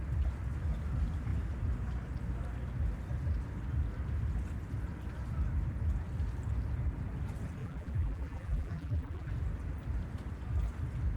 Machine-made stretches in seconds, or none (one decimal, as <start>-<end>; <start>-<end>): 7.6-9.3